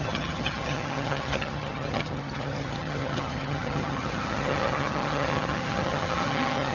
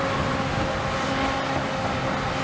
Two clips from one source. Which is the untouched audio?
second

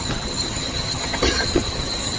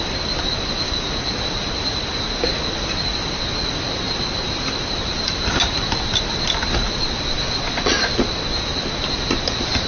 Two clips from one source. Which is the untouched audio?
second